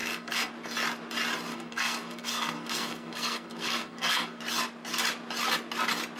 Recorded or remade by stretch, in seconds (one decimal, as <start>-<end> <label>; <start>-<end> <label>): 0.0-0.5 remade; 0.5-1.5 recorded; 1.5-4.4 remade; 4.4-6.2 recorded